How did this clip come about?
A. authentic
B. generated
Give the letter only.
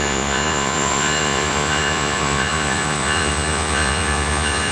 B